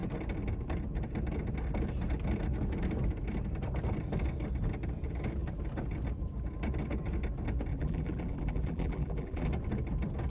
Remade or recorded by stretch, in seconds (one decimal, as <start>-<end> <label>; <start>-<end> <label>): 0.0-7.7 recorded; 7.7-9.5 remade; 9.5-10.3 recorded